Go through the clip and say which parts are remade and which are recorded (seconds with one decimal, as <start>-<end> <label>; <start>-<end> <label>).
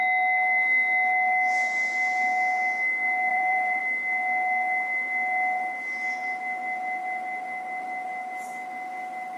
0.0-3.3 recorded; 3.3-3.8 remade; 3.8-9.4 recorded